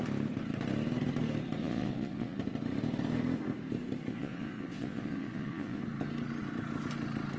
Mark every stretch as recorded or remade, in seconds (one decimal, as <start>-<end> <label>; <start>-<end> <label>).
0.0-1.6 recorded; 1.6-2.4 remade; 2.4-4.1 recorded; 4.1-5.8 remade; 5.8-7.4 recorded